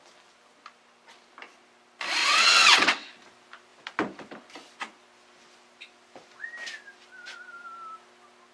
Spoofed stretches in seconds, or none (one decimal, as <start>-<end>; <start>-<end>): 2.2-3.1